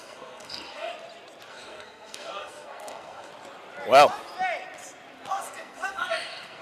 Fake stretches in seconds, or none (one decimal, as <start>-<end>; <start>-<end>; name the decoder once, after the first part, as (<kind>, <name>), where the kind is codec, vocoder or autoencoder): 0.0-0.9 (codec, SNAC); 1.5-3.3; 5.3-6.6